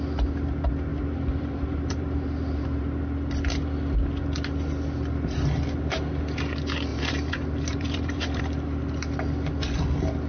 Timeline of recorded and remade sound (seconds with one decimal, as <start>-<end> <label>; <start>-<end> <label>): 0.0-0.9 recorded; 0.9-3.0 remade; 3.0-6.9 recorded; 6.9-8.4 remade; 8.4-10.3 recorded